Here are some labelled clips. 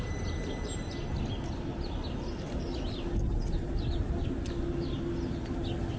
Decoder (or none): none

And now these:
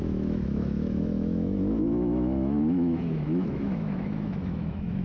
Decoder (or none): autoencoder, DAC-VAE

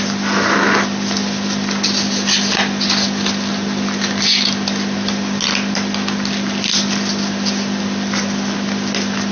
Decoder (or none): none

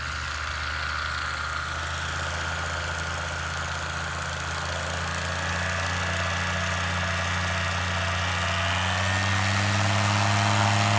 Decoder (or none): none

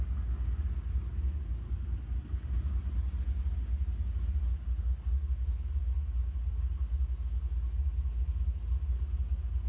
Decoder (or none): none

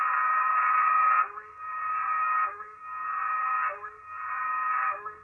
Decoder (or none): codec, SNAC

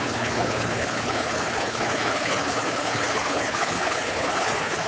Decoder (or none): codec, HILCodec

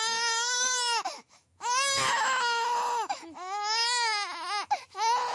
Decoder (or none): autoencoder, DAC-VAE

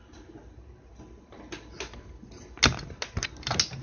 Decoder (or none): none